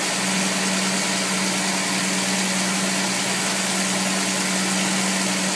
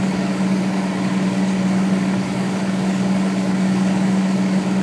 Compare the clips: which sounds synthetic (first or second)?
second